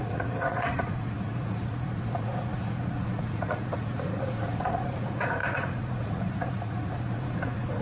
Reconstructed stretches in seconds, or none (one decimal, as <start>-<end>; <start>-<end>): 0.0-7.8

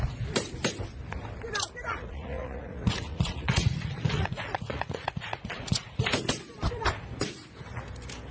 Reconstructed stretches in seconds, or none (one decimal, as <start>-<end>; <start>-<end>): 1.9-6.0

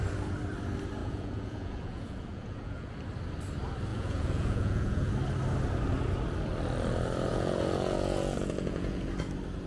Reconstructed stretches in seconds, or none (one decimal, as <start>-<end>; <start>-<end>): 1.0-2.9; 3.9-5.1; 7.3-9.1